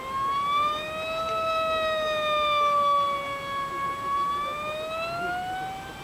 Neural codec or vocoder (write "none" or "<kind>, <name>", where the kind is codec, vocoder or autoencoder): none